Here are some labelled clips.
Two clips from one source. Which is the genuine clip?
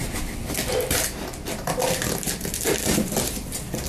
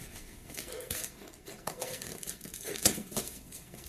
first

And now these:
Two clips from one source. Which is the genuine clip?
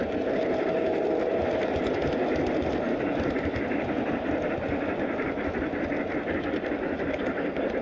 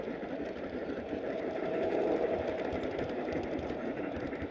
first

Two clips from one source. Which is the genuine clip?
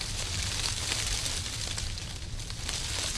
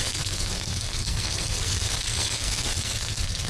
first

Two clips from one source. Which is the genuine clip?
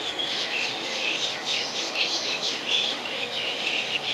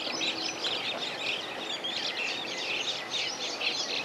second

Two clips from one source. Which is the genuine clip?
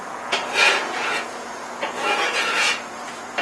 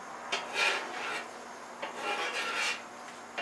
second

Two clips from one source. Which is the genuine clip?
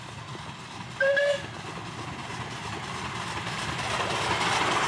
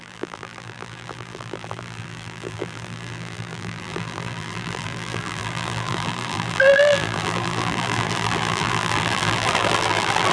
first